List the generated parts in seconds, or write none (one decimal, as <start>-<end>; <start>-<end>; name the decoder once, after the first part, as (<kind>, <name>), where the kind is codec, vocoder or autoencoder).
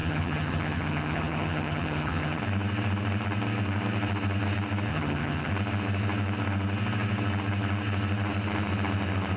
0.0-2.4 (vocoder, HiFi-GAN); 4.9-5.5